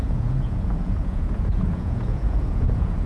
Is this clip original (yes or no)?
no